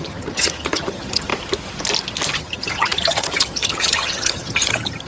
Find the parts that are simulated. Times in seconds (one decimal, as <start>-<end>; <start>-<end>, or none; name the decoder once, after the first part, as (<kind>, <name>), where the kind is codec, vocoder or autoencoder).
0.0-1.3 (vocoder, HiFi-GAN); 2.4-5.1